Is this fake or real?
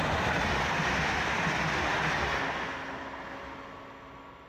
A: real